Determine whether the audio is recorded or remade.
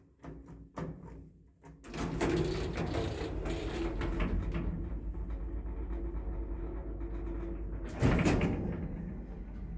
recorded